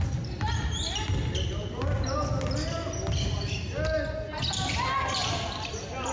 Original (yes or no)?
yes